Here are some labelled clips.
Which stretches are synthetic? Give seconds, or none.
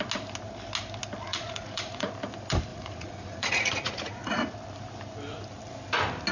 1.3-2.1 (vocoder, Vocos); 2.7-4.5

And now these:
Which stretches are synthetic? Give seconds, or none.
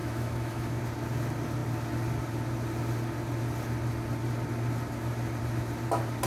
0.0-0.8 (autoencoder, DAC-VAE)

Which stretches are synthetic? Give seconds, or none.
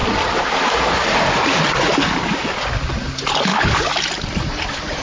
1.9-2.5 (codec, DAC); 3.5-4.0